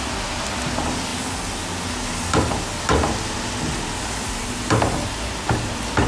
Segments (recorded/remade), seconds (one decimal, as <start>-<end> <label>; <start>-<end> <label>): 0.0-6.1 recorded